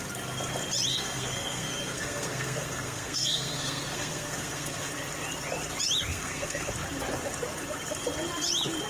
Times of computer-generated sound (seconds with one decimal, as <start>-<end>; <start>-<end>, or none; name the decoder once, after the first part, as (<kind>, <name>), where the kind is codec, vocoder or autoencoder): 0.9-4.9 (codec, SNAC); 6.1-6.7